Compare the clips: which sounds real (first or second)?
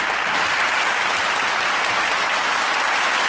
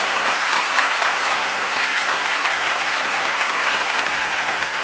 first